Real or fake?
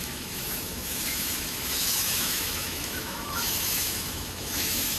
fake